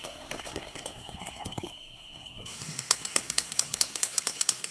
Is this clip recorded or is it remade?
remade